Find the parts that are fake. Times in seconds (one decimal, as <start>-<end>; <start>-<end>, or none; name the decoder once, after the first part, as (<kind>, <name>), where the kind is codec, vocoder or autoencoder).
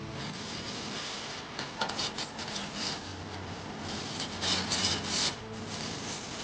none